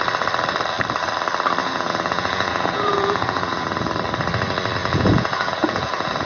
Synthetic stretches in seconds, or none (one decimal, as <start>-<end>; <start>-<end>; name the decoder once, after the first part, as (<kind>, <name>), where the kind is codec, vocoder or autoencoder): 1.6-3.9 (vocoder, Vocos); 4.8-6.3